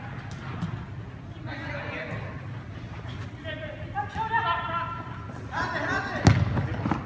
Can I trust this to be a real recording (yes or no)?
yes